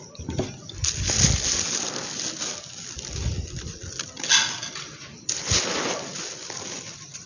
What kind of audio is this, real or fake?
real